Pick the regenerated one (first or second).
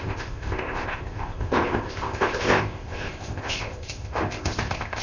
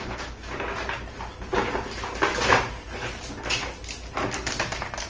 first